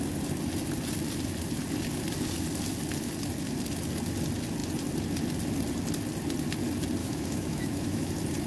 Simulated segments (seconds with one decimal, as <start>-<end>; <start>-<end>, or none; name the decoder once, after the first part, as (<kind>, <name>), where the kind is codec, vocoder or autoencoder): 7.0-8.1 (autoencoder, DAC-VAE)